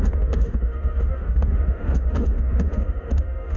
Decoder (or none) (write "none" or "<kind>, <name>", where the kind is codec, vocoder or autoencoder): autoencoder, DAC-VAE